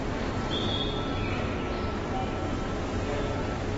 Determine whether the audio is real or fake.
real